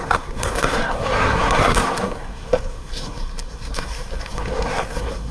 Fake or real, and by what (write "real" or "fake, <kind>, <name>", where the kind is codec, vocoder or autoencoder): fake, codec, SNAC